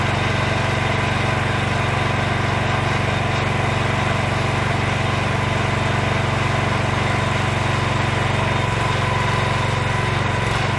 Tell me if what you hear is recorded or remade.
recorded